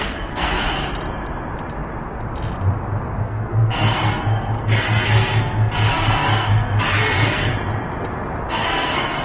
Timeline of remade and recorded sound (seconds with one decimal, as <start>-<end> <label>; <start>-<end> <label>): 0.0-0.6 remade; 0.6-3.2 recorded; 3.2-7.5 remade; 7.5-8.5 recorded; 8.5-9.2 remade